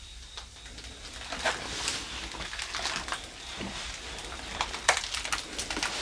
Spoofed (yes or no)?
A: no